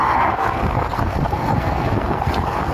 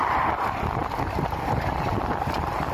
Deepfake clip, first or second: first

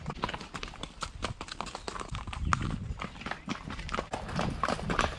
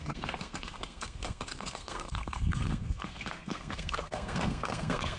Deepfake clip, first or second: second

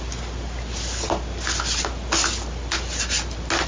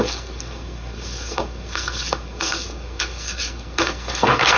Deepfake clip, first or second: second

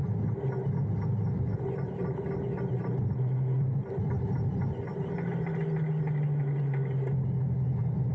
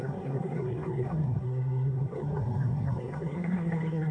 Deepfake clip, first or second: second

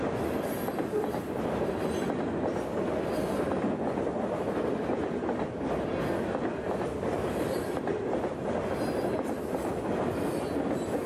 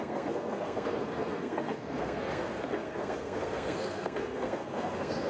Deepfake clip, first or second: second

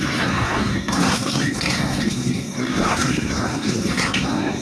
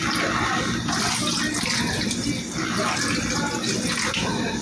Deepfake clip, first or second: first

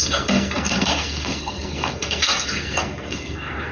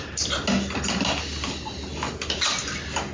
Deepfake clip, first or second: first